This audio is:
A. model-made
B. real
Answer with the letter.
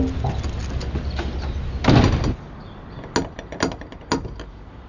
B